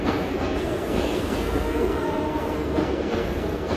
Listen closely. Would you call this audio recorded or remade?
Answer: remade